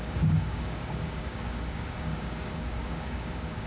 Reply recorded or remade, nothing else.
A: remade